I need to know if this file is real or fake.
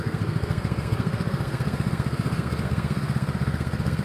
fake